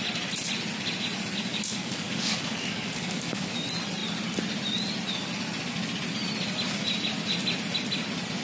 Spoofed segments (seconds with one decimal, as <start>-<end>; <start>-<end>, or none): 1.5-3.5